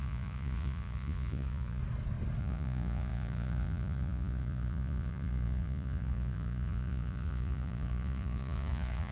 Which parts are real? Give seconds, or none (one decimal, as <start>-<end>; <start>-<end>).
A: 1.8-2.4